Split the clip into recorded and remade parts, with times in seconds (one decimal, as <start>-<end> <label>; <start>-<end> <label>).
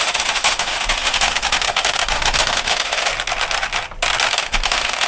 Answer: 0.0-3.1 remade; 3.1-4.3 recorded; 4.3-5.1 remade